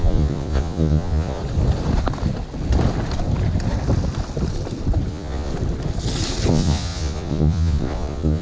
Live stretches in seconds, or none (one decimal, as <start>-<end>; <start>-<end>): 1.4-5.1; 5.5-6.5